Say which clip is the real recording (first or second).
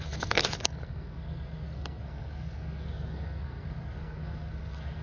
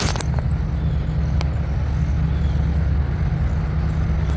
second